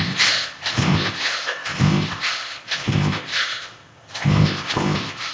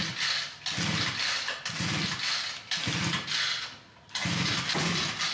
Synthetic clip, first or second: first